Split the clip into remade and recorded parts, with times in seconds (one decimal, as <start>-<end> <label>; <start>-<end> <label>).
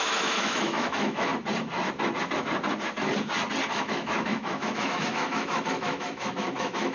0.0-1.3 remade; 1.3-3.7 recorded; 3.7-6.9 remade